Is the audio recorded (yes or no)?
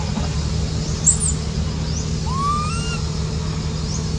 yes